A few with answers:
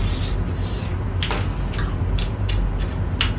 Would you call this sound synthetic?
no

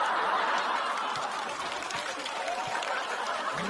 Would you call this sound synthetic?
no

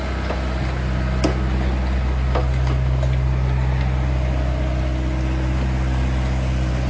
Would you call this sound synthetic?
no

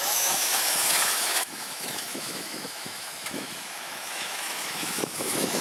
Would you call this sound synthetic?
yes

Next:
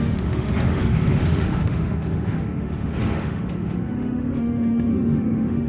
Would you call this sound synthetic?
yes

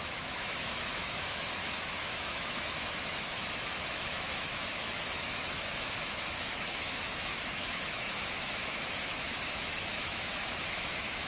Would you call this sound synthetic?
yes